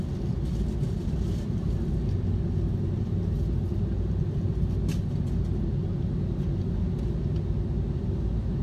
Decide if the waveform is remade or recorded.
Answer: recorded